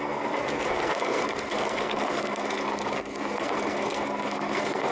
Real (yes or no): no